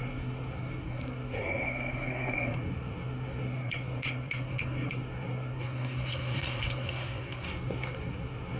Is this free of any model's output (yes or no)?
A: no